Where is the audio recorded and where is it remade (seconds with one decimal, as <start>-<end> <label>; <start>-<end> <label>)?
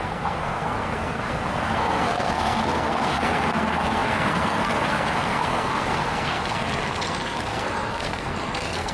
0.0-8.9 remade